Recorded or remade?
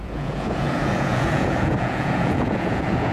remade